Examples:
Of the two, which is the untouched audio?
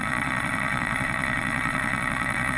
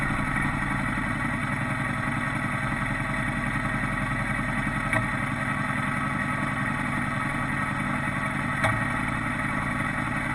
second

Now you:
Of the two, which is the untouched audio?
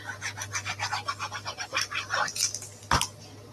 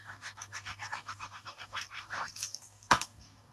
first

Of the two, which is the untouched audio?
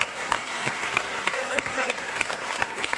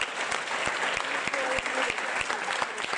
second